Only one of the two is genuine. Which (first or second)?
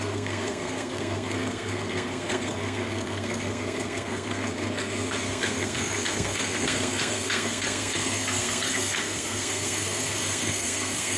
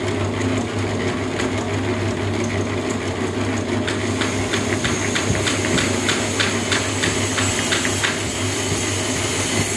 second